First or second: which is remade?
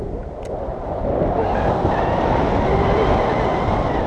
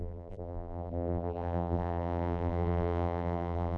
second